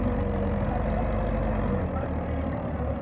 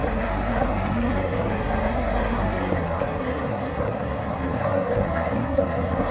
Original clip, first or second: first